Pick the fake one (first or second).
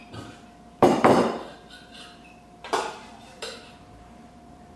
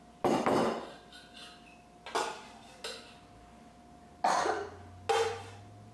first